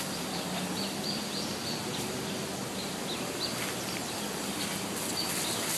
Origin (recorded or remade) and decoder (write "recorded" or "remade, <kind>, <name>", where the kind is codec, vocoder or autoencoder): recorded